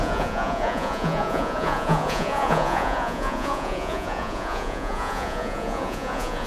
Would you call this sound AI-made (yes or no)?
yes